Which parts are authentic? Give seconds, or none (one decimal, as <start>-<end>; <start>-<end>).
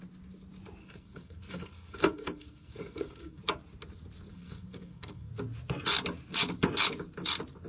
0.0-0.8; 3.4-4.3; 5.3-7.7